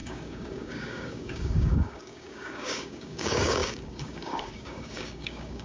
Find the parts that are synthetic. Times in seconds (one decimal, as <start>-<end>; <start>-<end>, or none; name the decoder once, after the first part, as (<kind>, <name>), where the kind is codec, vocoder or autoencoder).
0.0-5.6 (codec, DAC)